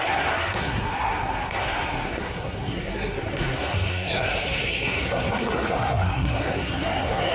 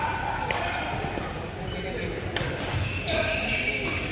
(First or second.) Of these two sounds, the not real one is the first